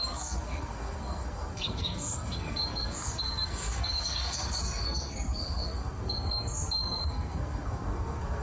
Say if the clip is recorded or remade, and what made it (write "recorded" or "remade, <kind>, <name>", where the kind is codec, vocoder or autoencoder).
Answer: remade, codec, SNAC